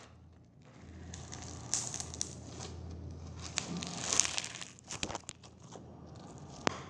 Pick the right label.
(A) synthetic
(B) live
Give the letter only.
B